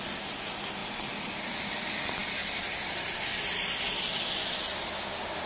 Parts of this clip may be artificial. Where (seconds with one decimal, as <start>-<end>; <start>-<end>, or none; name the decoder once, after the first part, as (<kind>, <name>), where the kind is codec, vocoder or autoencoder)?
none